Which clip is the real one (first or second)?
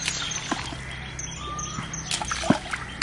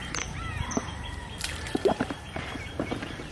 first